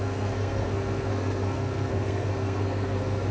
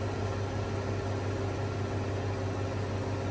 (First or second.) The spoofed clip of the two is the first